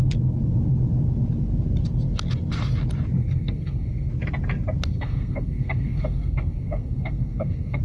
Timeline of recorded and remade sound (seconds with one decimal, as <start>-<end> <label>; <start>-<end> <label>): 0.0-3.2 recorded; 3.2-4.1 remade; 4.1-4.9 recorded; 4.9-7.8 remade